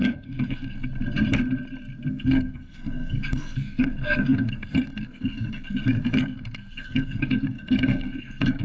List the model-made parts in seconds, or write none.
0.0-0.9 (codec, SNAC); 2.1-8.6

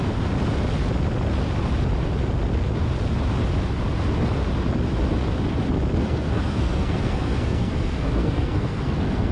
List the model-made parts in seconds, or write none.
6.0-9.3 (codec, SNAC)

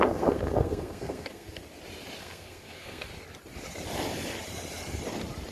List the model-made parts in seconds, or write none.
0.0-1.6 (codec, SNAC); 2.2-3.1

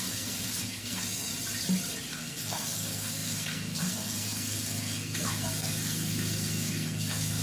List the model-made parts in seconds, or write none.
0.0-1.3 (codec, SNAC); 2.1-7.4

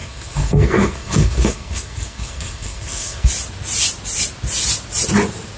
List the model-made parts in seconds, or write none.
0.0-3.3 (codec, SNAC)

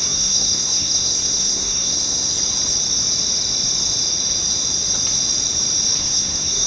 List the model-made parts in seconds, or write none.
0.0-2.3 (codec, SNAC); 6.0-6.7

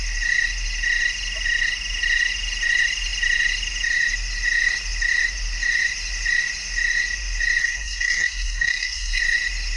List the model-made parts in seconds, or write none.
7.6-9.2 (codec, SNAC)